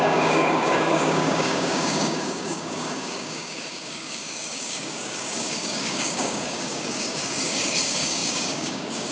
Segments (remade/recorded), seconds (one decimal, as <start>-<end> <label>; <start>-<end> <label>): 0.0-9.1 remade